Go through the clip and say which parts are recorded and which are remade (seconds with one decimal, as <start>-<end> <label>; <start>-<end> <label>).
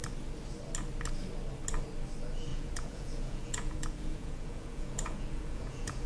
0.0-2.5 recorded; 2.5-6.1 remade